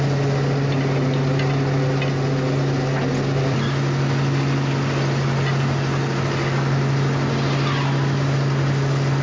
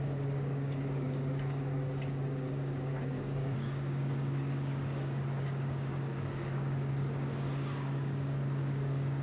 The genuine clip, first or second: first